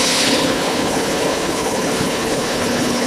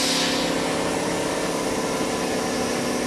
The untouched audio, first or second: second